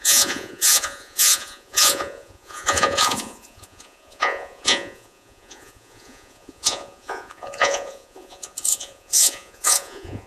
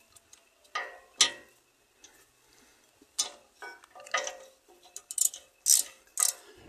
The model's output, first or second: first